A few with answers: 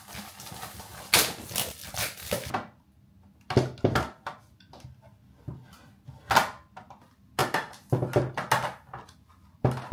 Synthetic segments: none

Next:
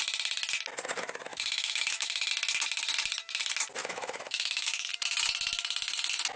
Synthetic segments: 1.3-2.3 (autoencoder, DAC-VAE); 3.8-4.9

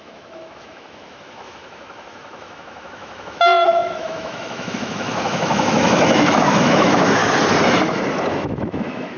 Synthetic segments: 0.0-7.2 (autoencoder, DAC-VAE); 8.3-9.2

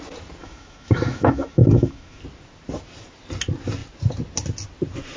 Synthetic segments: 0.4-2.2 (autoencoder, DAC-VAE)

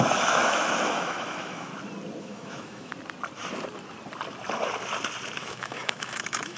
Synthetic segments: 0.0-1.7 (autoencoder, DAC-VAE); 2.2-2.9; 5.4-6.6

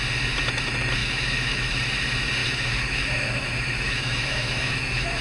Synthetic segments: 1.0-1.7 (autoencoder, DAC-VAE); 2.4-5.2

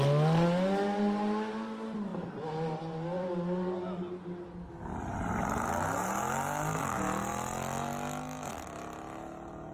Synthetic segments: none